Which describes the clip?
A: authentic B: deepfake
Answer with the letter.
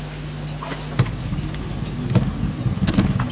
A